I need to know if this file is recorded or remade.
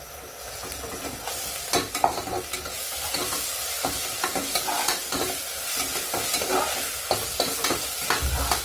recorded